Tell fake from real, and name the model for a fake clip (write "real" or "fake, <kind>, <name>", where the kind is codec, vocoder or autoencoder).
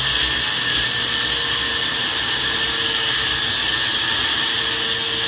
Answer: real